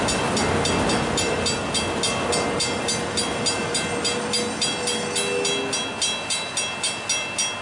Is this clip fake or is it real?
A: real